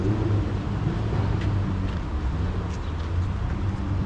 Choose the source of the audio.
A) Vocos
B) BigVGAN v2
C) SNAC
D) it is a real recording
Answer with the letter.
D